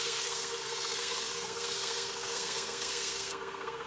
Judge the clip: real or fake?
fake